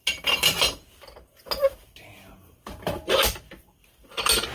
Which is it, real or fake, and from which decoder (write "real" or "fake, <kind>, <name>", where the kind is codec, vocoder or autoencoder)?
real